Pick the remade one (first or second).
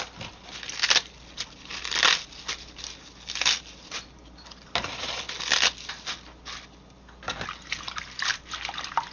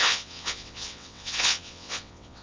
second